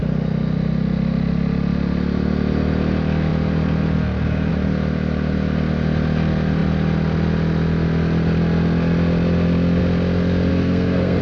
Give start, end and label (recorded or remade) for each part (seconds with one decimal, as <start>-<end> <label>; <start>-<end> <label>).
0.0-10.5 recorded; 10.5-11.2 remade